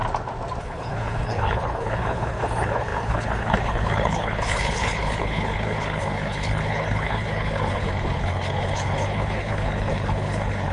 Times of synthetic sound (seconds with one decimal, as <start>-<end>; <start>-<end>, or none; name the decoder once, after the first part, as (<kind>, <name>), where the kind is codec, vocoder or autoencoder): 0.6-10.7 (codec, HILCodec)